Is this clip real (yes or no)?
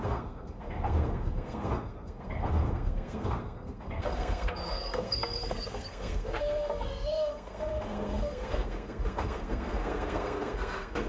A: no